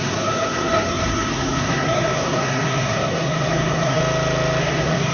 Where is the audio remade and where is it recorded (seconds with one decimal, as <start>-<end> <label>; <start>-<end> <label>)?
0.0-4.0 remade; 4.0-4.6 recorded; 4.6-5.1 remade